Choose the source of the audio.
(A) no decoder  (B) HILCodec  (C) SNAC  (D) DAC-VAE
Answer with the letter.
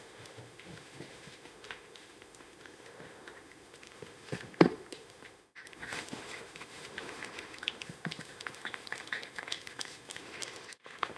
D